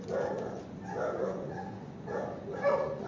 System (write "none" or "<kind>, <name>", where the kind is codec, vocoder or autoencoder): vocoder, Vocos